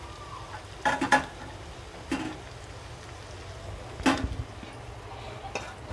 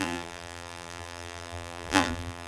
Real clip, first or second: first